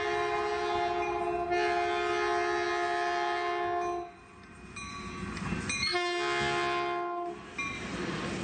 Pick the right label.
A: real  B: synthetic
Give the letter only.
A